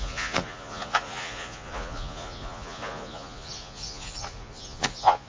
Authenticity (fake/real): fake